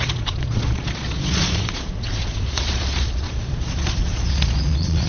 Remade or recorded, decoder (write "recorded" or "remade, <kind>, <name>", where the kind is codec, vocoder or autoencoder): remade, vocoder, Vocos